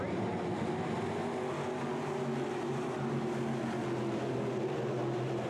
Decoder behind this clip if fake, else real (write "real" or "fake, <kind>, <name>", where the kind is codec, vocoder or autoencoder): real